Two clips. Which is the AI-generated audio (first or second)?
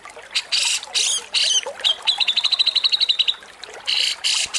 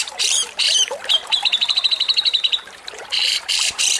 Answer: second